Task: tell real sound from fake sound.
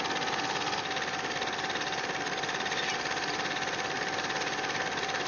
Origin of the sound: real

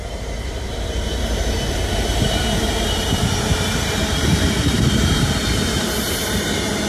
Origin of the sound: fake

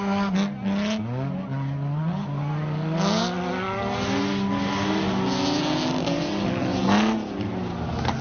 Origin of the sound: real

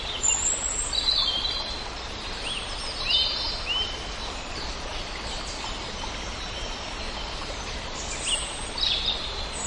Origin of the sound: real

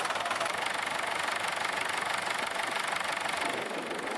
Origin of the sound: real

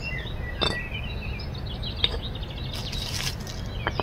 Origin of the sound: real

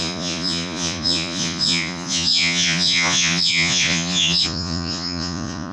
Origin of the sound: fake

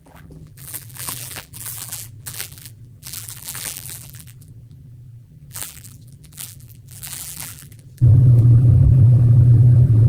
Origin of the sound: fake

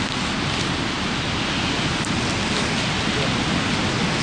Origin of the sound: real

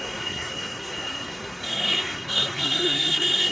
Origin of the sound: fake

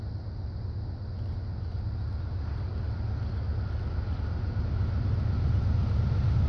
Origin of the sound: real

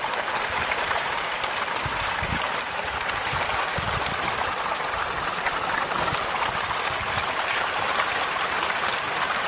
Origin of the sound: fake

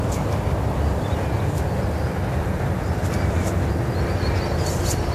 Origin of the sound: real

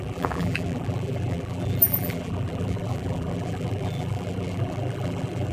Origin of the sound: fake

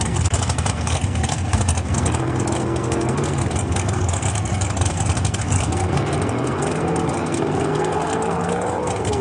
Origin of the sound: fake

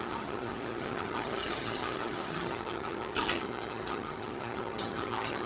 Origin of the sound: fake